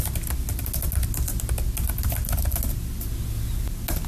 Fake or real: real